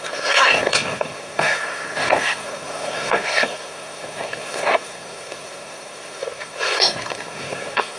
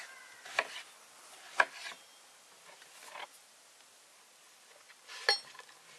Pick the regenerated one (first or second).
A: first